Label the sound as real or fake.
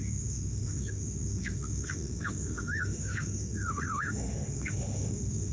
fake